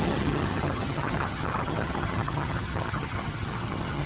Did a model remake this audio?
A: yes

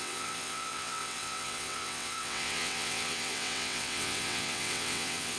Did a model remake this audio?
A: yes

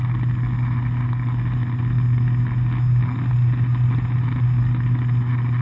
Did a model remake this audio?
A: no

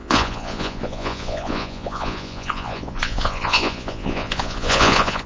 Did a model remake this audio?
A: yes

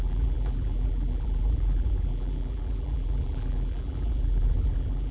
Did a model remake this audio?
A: yes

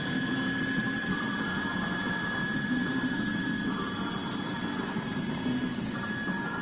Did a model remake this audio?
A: no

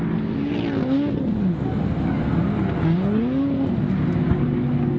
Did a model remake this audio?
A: no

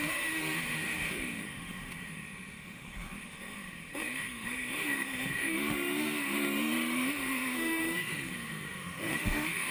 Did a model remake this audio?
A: yes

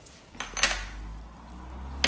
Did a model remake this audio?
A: no